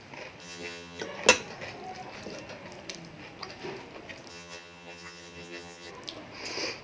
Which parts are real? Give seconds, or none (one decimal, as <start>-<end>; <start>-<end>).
0.0-0.4; 1.0-4.3; 5.9-6.8